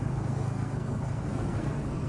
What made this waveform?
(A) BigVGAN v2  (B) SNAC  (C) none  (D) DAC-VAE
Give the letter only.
B